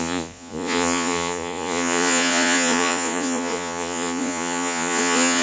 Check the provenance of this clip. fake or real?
fake